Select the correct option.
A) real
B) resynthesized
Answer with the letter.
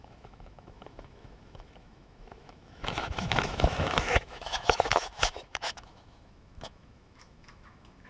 B